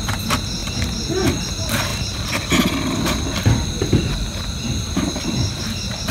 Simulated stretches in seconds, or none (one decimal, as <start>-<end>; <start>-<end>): none